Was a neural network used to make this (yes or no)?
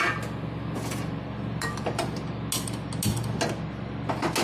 no